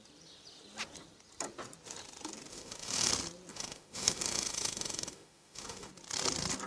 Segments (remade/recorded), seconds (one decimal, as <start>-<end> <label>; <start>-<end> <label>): 0.0-2.5 recorded; 2.5-3.1 remade; 3.1-3.5 recorded; 3.5-5.9 remade; 5.9-6.7 recorded

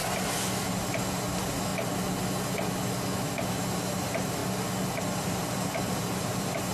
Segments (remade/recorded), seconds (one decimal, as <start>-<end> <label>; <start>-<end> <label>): 0.0-0.7 recorded; 0.7-1.7 remade; 1.7-3.5 recorded; 3.5-4.4 remade; 4.4-5.0 recorded; 5.0-6.7 remade

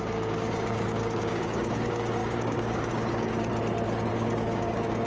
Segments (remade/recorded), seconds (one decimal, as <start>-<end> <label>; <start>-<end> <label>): 0.0-3.5 remade; 3.5-4.1 recorded; 4.1-5.1 remade